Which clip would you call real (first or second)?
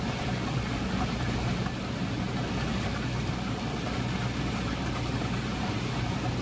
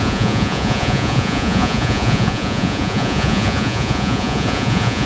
first